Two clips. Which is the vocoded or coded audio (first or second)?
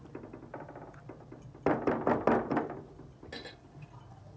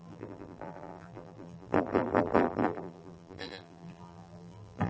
second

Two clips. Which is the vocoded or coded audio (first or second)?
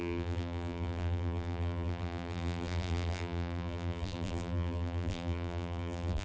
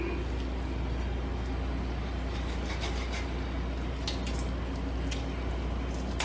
first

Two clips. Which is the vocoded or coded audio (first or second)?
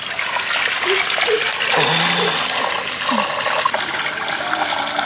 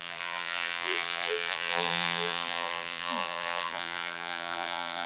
second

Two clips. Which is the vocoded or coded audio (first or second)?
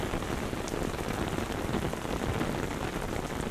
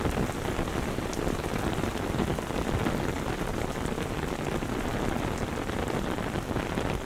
second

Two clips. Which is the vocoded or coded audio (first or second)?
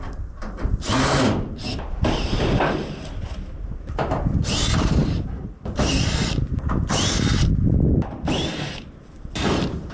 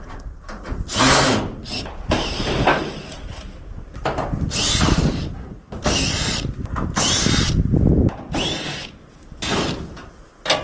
first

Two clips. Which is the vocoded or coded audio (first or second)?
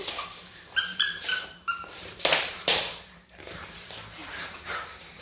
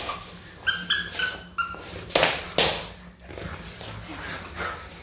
first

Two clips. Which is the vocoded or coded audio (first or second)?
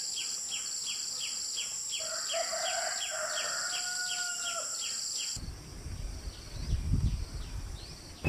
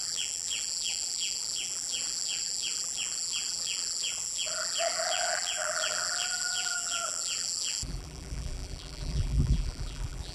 second